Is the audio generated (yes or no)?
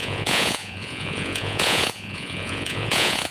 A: yes